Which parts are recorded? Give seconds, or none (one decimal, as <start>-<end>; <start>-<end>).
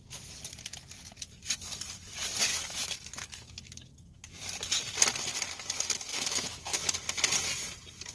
0.0-2.5; 4.3-6.1; 6.9-8.1